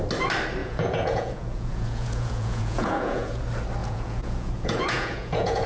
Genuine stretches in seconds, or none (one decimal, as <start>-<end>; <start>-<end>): 0.0-0.6; 3.4-3.8